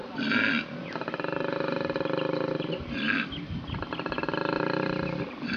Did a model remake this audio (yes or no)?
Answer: no